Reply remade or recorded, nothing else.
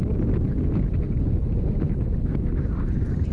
recorded